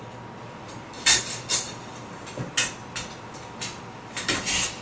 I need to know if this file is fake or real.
real